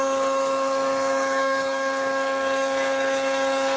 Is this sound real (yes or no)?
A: no